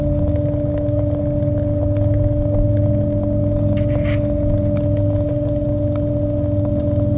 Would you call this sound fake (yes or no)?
no